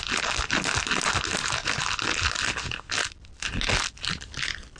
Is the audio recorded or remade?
recorded